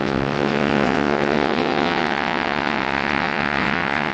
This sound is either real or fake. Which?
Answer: fake